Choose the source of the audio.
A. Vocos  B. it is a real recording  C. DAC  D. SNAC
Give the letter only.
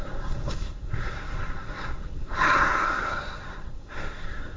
D